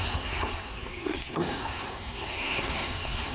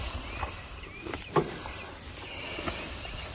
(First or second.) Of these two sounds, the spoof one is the first